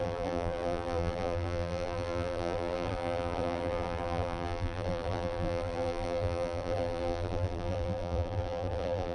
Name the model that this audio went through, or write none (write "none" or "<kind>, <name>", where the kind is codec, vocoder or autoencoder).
vocoder, BigVGAN v2